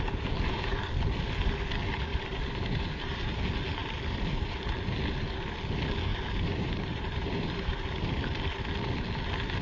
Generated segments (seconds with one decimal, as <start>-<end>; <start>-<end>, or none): 2.1-3.4; 3.8-4.7; 6.1-8.2